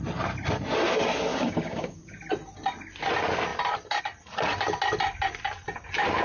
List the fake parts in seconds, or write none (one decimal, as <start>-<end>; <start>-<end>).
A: 1.3-2.2